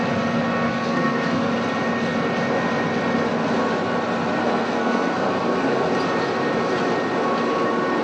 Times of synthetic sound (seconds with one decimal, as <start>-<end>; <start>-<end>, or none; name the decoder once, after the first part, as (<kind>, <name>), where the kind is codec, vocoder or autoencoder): 0.7-1.5 (codec, SNAC); 4.4-5.9